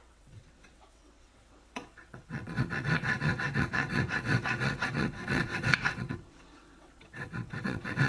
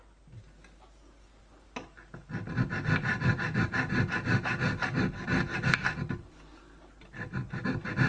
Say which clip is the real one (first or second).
second